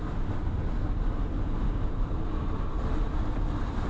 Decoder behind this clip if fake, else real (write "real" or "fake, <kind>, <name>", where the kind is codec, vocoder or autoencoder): real